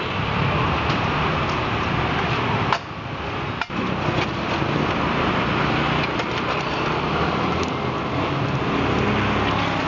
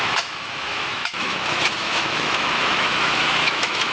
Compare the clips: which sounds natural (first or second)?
first